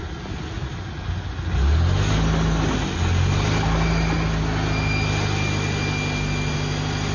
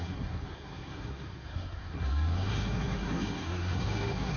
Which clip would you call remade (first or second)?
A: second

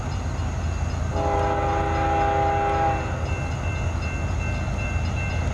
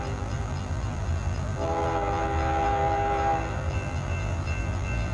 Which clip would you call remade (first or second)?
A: second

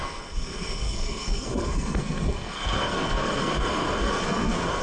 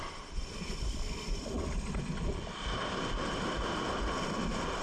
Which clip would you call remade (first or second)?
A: first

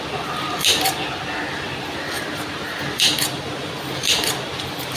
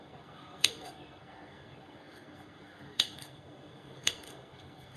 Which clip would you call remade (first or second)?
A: second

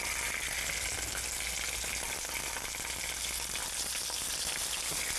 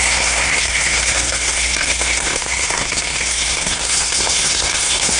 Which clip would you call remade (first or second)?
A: second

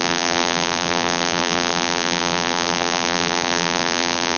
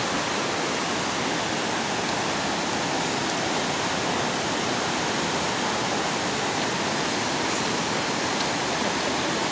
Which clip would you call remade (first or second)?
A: first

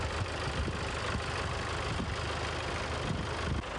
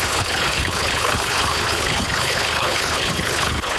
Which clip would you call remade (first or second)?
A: second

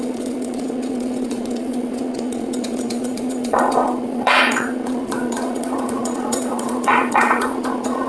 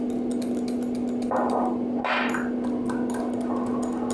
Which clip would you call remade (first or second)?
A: first